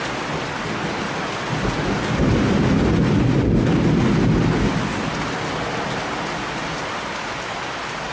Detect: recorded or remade recorded